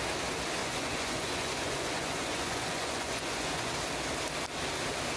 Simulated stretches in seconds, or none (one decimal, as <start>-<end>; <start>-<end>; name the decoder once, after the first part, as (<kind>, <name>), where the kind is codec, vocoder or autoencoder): 0.6-3.7 (vocoder, Vocos)